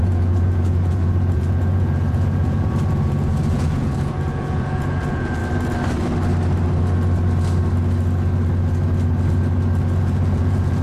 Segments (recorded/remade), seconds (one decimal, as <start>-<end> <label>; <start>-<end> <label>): 0.0-5.4 remade; 5.4-10.0 recorded; 10.0-10.8 remade